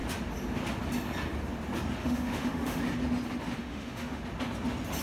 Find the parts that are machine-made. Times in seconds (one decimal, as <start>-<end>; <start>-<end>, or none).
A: 2.0-2.8; 3.6-4.2